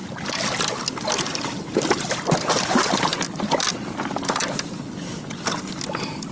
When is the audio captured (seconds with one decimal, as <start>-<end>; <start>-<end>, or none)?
0.0-6.3